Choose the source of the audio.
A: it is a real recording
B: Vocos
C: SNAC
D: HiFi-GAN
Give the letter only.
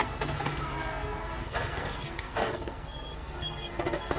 C